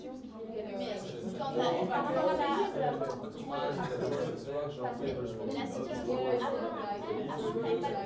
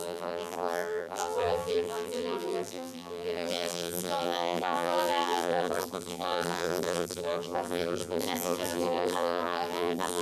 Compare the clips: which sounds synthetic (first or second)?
second